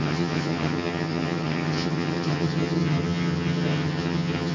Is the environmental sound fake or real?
fake